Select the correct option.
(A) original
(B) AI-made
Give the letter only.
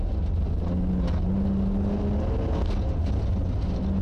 A